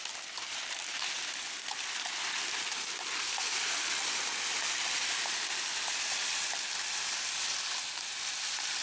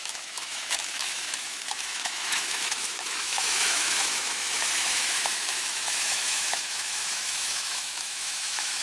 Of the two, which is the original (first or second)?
first